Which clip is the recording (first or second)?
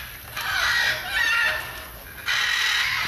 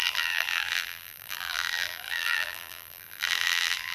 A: first